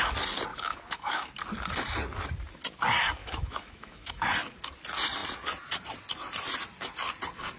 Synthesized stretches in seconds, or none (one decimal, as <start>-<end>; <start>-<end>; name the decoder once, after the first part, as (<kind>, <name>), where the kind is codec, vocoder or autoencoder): 0.5-1.3 (autoencoder, DAC-VAE); 3.2-4.3